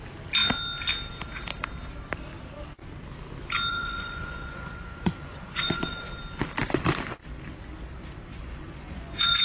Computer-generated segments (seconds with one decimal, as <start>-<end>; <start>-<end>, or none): 3.7-6.2; 8.4-9.4